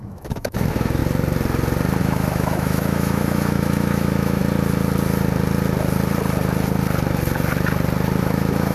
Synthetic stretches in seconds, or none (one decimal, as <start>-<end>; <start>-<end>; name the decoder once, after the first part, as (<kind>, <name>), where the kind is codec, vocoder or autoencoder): 0.0-1.0 (autoencoder, DAC-VAE); 2.0-4.4; 8.2-8.7